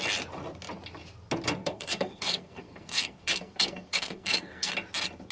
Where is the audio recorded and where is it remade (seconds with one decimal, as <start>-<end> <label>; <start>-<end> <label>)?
0.0-1.6 recorded; 1.6-4.7 remade; 4.7-5.3 recorded